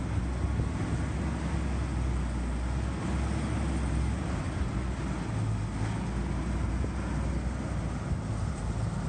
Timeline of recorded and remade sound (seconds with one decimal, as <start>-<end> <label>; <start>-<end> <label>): 0.0-9.1 recorded